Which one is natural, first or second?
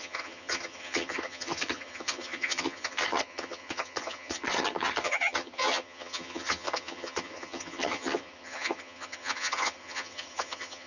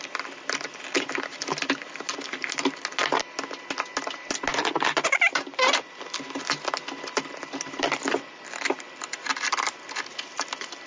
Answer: second